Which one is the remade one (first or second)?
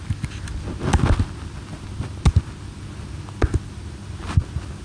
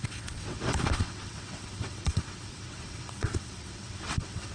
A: second